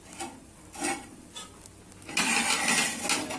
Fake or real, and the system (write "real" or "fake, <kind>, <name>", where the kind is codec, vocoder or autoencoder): real